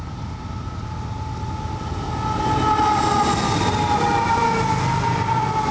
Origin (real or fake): real